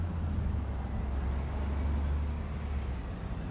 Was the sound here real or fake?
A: real